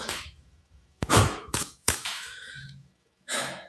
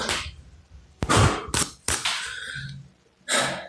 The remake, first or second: first